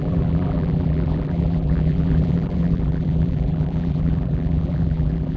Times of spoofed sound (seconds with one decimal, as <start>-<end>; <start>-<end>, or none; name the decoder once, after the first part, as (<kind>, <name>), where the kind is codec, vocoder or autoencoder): 0.0-5.4 (vocoder, BigVGAN v2)